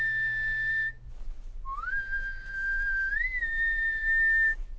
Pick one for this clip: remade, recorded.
recorded